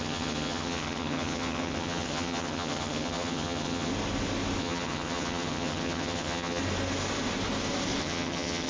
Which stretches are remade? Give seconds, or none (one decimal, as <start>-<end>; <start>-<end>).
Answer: 0.0-3.9; 4.6-6.6; 8.0-8.7